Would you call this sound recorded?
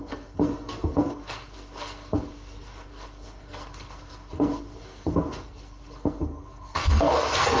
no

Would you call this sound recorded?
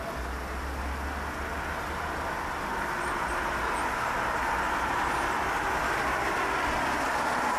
yes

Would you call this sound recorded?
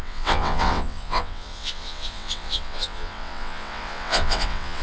no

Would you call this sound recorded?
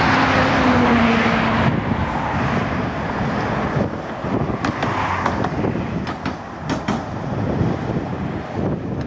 yes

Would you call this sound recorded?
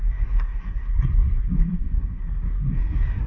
no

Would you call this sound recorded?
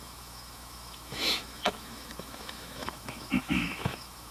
no